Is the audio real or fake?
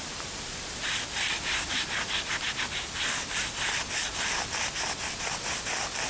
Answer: real